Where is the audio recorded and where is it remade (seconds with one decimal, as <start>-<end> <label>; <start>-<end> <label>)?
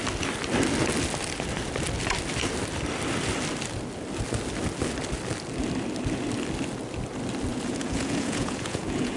0.0-7.5 recorded; 7.5-9.2 remade